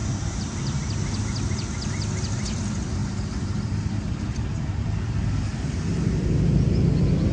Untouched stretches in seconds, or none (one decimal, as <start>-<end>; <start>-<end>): 0.0-3.0; 6.3-7.3